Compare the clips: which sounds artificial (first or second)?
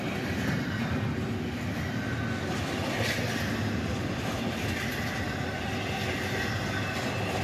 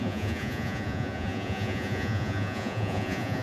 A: second